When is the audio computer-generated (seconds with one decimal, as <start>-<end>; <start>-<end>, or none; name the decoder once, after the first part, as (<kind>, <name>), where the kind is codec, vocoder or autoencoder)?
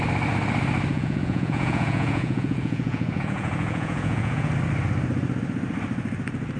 0.9-4.5 (vocoder, Vocos)